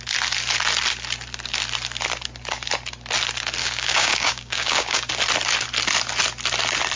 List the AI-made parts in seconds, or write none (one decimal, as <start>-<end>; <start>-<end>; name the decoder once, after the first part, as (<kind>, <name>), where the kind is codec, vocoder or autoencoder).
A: 3.6-5.1 (codec, DAC)